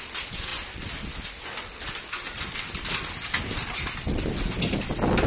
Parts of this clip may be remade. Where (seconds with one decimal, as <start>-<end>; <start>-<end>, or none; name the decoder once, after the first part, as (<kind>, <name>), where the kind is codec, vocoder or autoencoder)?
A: none